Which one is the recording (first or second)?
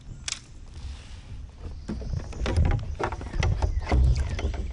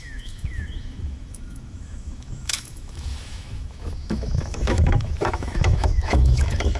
first